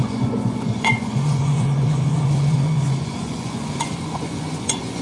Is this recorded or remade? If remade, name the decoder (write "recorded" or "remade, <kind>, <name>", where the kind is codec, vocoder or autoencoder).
remade, vocoder, Vocos